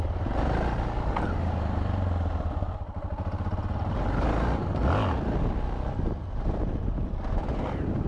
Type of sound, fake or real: real